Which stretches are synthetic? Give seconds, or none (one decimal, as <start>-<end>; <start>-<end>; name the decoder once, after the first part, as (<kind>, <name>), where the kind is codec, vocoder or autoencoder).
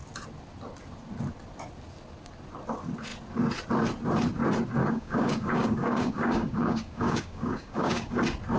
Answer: 4.8-8.2 (codec, DAC)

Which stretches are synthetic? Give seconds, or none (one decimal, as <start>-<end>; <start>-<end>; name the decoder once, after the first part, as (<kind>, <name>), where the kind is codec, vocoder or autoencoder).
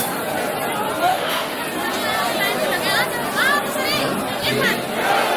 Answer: 1.1-1.6 (autoencoder, DAC-VAE)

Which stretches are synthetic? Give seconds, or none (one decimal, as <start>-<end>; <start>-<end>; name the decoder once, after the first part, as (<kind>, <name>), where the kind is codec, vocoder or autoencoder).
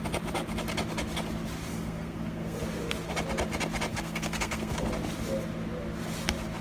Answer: 1.7-2.6 (codec, SNAC); 3.9-4.9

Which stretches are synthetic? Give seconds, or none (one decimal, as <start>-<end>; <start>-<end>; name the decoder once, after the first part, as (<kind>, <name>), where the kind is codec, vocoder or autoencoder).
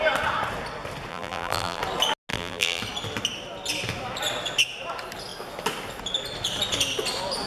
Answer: 1.1-1.8 (vocoder, BigVGAN v2); 2.3-2.8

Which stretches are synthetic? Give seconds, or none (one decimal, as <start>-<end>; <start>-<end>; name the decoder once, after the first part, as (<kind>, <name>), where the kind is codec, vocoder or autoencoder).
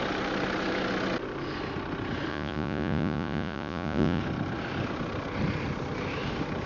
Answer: 2.3-4.2 (vocoder, Vocos)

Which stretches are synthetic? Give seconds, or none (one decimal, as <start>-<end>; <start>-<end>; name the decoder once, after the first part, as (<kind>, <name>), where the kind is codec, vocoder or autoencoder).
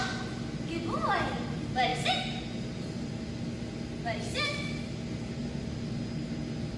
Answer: none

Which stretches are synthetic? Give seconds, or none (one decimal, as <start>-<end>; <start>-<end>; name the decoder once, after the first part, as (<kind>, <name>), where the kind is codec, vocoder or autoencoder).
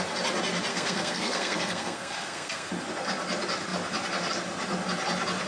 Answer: 0.7-2.7 (codec, SNAC)